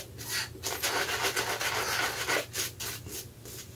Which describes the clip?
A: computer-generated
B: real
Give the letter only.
B